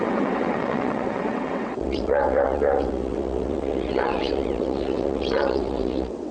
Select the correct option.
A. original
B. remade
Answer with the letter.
B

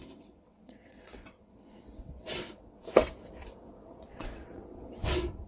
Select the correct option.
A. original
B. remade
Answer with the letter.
B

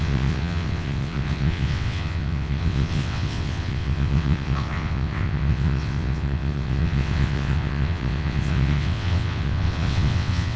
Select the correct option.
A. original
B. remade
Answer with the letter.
B